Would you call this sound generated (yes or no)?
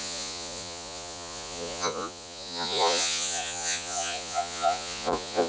yes